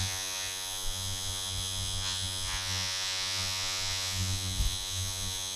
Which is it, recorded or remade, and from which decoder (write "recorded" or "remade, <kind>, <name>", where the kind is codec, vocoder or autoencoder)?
remade, vocoder, Vocos